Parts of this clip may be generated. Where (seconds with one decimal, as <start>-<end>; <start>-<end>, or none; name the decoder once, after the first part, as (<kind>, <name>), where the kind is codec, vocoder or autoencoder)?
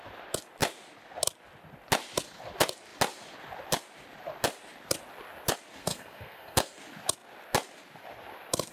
5.8-6.8 (codec, SNAC)